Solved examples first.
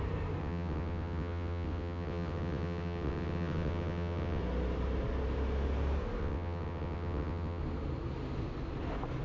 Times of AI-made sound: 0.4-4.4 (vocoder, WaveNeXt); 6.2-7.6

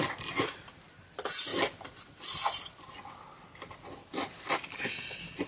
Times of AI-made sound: none

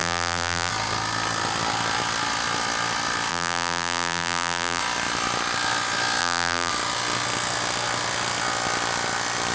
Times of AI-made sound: 0.0-0.7 (vocoder, BigVGAN v2); 3.3-4.8; 6.2-6.7

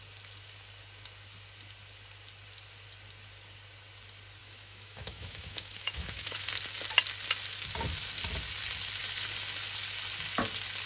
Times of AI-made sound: 4.4-6.5 (autoencoder, DAC-VAE)

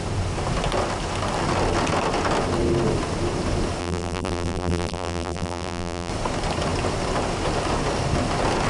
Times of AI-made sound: 3.8-6.1 (vocoder, BigVGAN v2)

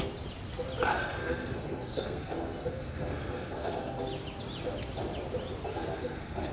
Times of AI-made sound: 0.9-4.0 (codec, SNAC); 5.7-6.5